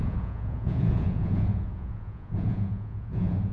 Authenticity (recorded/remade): remade